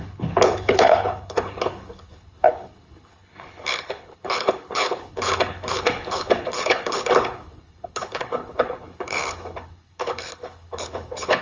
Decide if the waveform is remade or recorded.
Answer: remade